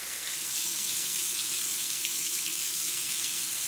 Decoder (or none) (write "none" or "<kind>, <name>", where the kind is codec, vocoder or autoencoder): codec, SNAC